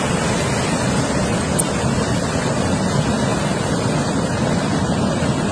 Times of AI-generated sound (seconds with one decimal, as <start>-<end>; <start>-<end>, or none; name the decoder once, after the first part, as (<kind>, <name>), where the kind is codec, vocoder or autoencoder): 3.3-3.9 (vocoder, BigVGAN v2)